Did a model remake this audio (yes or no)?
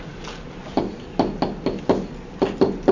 no